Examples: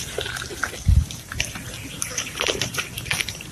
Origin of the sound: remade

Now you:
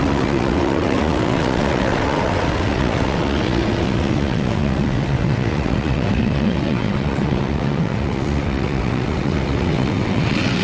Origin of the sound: remade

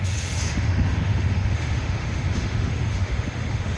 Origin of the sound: remade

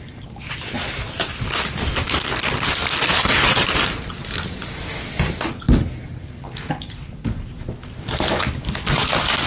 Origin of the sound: recorded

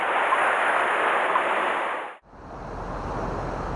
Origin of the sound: recorded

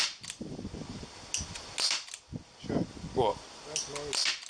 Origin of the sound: recorded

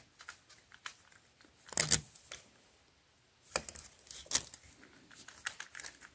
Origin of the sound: recorded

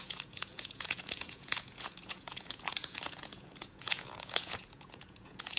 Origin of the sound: remade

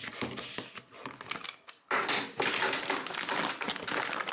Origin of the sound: recorded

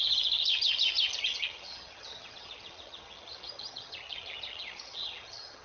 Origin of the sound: remade